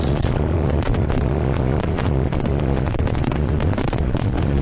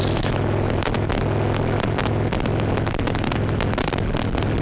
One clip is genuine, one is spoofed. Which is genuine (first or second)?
second